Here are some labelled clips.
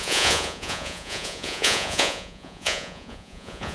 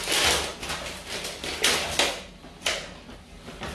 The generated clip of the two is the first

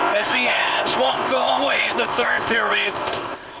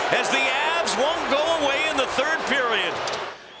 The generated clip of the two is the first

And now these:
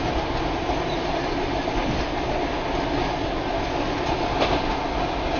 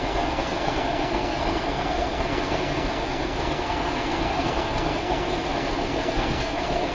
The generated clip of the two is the second